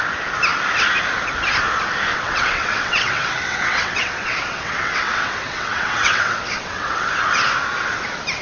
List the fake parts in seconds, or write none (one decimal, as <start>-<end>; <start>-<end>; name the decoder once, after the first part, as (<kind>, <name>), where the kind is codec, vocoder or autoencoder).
2.1-7.1 (vocoder, WaveNeXt)